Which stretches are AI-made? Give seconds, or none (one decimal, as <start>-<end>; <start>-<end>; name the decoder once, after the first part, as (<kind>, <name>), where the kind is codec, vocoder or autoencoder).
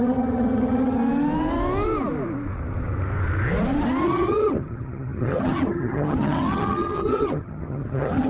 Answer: 0.0-1.0 (vocoder, HiFi-GAN); 4.0-8.3